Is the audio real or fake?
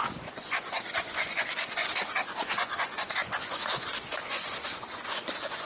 fake